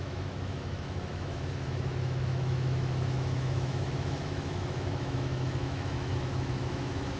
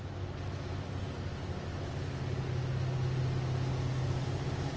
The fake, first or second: first